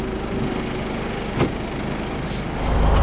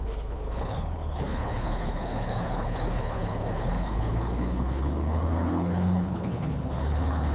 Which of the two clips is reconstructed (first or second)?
second